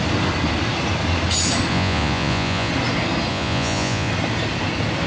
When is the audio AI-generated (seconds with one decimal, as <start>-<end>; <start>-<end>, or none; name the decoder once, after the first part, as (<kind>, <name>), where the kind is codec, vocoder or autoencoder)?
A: 1.7-2.7 (vocoder, Vocos); 3.3-4.1